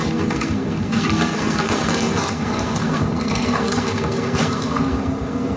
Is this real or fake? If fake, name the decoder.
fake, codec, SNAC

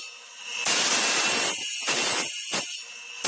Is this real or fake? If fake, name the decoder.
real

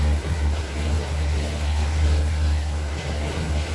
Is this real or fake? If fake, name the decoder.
fake, codec, SNAC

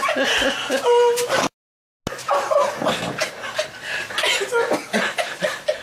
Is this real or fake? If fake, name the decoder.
real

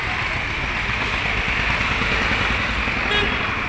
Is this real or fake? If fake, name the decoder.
real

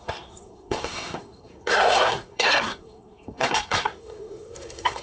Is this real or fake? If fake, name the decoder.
fake, codec, SNAC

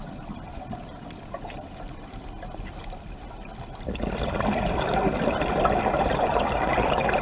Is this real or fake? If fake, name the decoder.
real